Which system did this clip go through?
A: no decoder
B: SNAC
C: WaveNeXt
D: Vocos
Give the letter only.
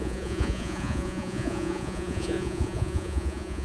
D